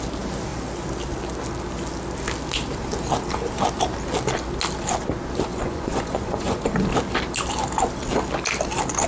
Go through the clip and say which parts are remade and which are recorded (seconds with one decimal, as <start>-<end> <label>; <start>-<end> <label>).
0.0-5.5 recorded; 5.5-6.6 remade; 6.6-9.1 recorded